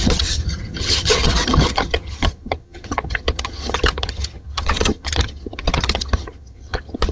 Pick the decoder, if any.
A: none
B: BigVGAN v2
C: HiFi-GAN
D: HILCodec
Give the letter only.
C